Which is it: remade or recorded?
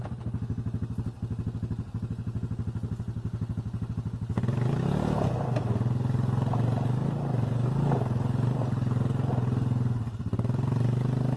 recorded